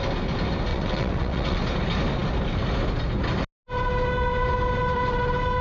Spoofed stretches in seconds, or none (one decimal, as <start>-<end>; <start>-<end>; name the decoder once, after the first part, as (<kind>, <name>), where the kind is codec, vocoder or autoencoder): 0.7-1.6 (vocoder, WaveNeXt)